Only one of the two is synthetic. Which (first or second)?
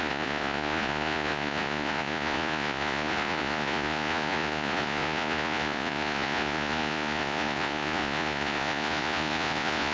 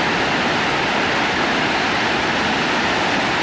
first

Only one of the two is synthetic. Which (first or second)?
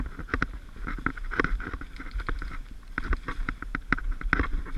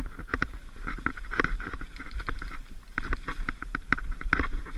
second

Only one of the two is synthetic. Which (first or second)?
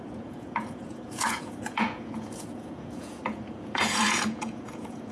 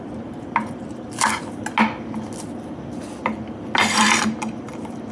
first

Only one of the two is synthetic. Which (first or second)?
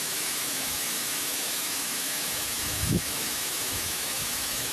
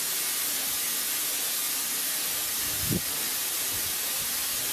first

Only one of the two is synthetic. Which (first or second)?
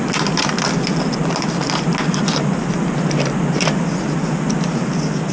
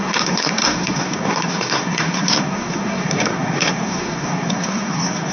second